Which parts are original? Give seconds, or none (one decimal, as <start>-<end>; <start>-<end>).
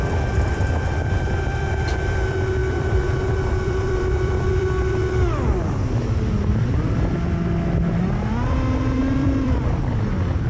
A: 5.8-9.0